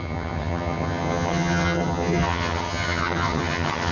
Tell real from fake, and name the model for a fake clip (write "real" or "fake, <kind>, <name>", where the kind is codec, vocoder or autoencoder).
fake, vocoder, HiFi-GAN